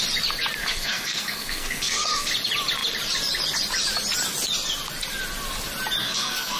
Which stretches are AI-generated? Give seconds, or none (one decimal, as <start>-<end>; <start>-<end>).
0.6-2.3; 6.0-6.6